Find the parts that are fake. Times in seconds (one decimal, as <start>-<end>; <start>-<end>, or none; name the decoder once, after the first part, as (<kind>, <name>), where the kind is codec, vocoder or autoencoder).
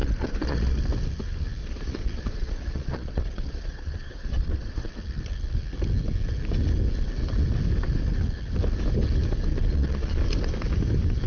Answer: 0.0-0.8 (vocoder, Vocos); 1.6-4.9; 9.5-10.2